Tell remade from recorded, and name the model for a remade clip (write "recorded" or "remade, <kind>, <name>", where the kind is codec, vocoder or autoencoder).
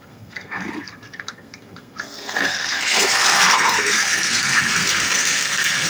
remade, codec, SNAC